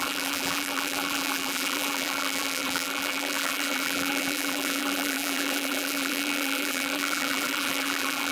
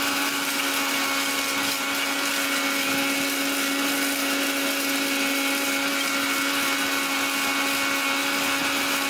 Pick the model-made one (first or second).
first